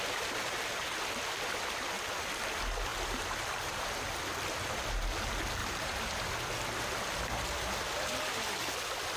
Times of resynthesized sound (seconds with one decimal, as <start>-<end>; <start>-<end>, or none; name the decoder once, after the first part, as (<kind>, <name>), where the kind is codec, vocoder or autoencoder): 2.9-4.2 (vocoder, BigVGAN v2); 5.6-6.3